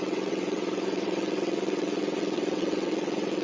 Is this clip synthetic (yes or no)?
yes